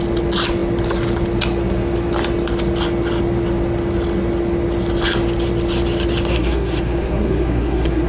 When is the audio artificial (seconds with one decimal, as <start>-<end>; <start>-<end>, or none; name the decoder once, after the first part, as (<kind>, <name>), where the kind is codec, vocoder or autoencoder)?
6.3-8.1 (codec, SNAC)